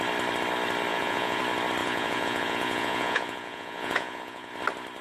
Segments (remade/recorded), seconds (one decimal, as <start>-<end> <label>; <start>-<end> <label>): 0.0-0.9 recorded; 0.9-1.4 remade; 1.4-1.8 recorded; 1.8-4.5 remade; 4.5-5.0 recorded